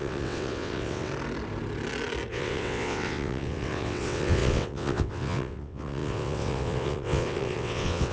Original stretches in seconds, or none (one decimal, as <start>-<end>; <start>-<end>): 1.1-2.3